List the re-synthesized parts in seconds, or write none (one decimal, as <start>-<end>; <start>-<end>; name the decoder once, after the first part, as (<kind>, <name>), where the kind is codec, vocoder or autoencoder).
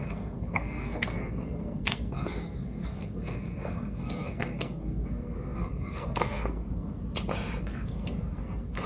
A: 0.0-7.0 (codec, SNAC); 7.6-8.9